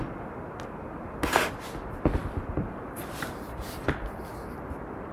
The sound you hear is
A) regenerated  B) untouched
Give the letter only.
B